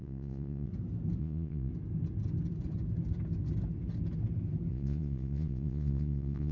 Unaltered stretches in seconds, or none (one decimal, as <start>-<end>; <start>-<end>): 0.7-1.2; 1.7-4.7